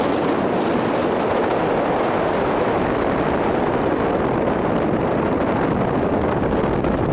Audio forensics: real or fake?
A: real